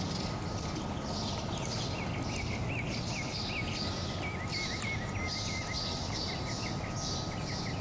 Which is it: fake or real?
real